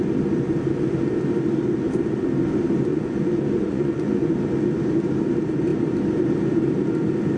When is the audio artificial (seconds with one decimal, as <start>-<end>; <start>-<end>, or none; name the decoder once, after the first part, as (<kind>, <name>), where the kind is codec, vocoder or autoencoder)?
2.9-4.3 (vocoder, Vocos)